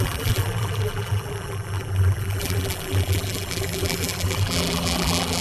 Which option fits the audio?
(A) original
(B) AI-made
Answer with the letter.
B